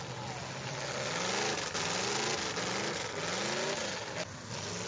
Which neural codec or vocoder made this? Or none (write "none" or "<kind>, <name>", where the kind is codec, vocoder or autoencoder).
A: none